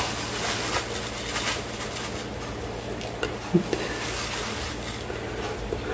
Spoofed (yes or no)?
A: no